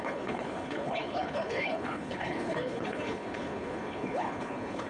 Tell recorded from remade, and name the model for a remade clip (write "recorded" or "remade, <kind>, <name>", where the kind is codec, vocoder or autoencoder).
remade, codec, HILCodec